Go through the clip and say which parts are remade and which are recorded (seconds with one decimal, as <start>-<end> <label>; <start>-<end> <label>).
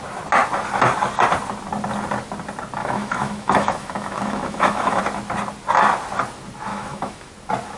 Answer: 0.0-2.8 recorded; 2.8-5.0 remade; 5.0-6.7 recorded; 6.7-7.3 remade; 7.3-7.8 recorded